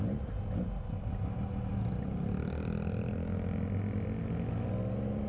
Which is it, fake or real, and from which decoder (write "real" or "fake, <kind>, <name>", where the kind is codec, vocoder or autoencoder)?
real